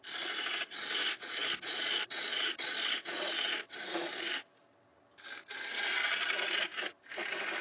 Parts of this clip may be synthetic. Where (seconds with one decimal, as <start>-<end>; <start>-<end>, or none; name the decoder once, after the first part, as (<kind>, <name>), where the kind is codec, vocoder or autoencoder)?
1.4-2.5 (vocoder, Vocos)